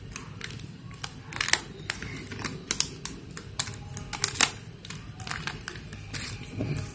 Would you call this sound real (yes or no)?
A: yes